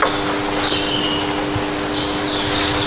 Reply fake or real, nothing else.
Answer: real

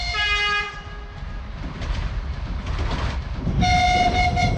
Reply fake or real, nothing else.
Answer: real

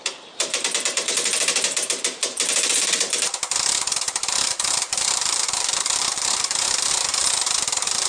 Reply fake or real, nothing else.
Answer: fake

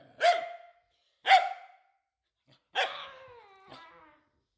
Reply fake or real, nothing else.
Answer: real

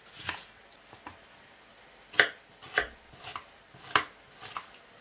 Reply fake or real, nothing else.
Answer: real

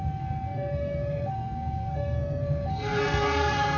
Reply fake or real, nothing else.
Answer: fake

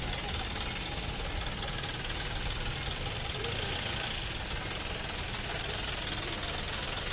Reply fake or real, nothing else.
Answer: real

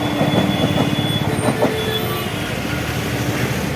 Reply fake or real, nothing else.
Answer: real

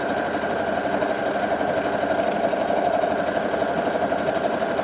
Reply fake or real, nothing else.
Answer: real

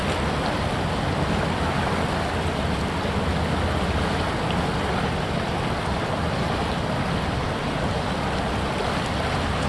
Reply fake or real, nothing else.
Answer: real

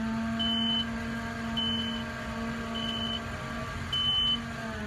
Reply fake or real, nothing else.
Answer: real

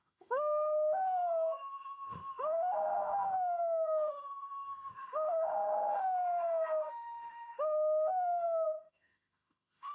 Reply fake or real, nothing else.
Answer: fake